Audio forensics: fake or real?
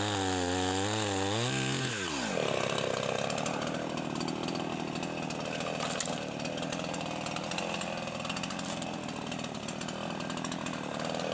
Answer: real